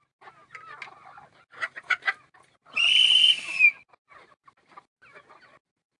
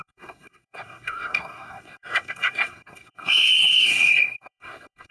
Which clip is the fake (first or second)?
second